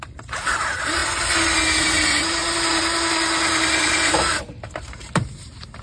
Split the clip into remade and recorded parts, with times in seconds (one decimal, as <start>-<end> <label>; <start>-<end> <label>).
0.0-1.0 remade; 1.0-1.8 recorded; 1.8-2.4 remade; 2.4-3.6 recorded; 3.6-5.8 remade